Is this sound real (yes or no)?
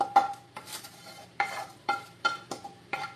no